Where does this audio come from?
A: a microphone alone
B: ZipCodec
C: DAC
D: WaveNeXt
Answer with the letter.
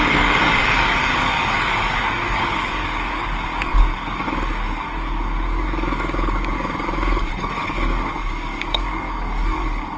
C